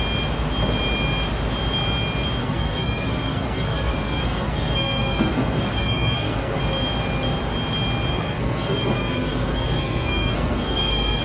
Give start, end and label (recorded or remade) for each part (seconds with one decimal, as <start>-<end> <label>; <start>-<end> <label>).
0.0-2.4 recorded; 2.4-6.6 remade; 6.6-8.1 recorded; 8.1-11.2 remade